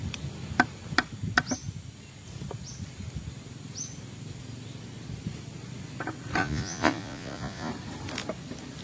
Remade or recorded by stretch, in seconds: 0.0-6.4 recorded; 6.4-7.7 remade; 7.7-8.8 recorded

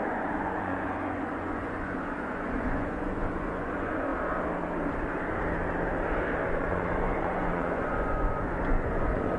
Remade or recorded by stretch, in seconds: 0.0-4.1 remade; 4.1-6.5 recorded; 6.5-9.4 remade

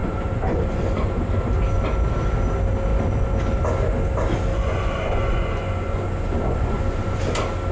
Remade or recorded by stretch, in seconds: 0.0-1.3 remade; 1.3-2.9 recorded; 2.9-3.4 remade; 3.4-4.5 recorded; 4.5-7.2 remade; 7.2-7.7 recorded

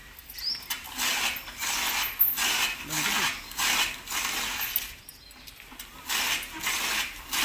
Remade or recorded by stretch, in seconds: 0.0-7.4 recorded

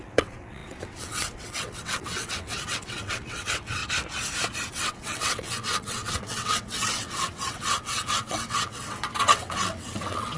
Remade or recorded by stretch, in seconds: 0.0-3.8 remade; 3.8-4.7 recorded; 4.7-10.4 remade

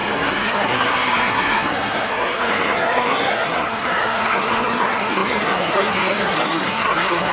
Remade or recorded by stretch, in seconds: 0.0-7.3 remade